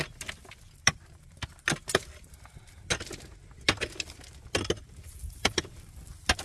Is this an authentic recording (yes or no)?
yes